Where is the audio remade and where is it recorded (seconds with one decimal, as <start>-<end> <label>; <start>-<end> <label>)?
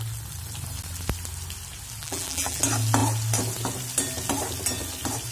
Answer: 0.0-2.0 recorded; 2.0-2.6 remade; 2.6-5.3 recorded